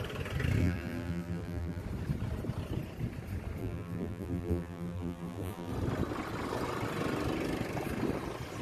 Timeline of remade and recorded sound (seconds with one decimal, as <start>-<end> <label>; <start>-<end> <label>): 0.0-0.6 recorded; 0.6-1.8 remade; 1.8-3.6 recorded; 3.6-5.7 remade; 5.7-8.6 recorded